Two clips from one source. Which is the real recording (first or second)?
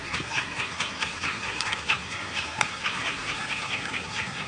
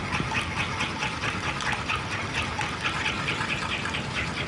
second